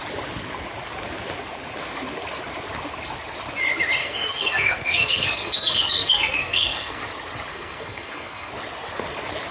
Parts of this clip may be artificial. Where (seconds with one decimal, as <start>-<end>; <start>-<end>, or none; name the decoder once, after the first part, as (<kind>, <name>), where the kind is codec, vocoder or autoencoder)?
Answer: 4.0-7.0 (codec, SNAC); 7.5-8.5